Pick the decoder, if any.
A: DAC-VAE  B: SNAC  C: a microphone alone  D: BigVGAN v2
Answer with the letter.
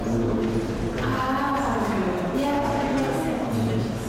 C